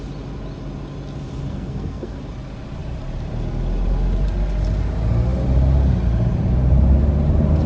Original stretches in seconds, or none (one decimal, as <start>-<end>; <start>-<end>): 0.0-1.5; 2.2-7.7